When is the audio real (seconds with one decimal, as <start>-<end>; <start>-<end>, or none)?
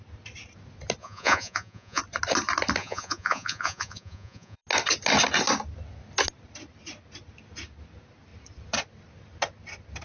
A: 0.0-1.0; 2.0-2.8; 4.6-10.0